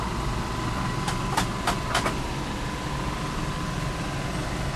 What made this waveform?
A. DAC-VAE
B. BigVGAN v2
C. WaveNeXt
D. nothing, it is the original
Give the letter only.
D